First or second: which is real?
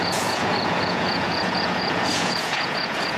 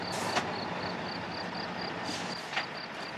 second